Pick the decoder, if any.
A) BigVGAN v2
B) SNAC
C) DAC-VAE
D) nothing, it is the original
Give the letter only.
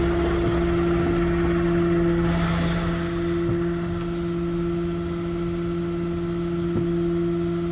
D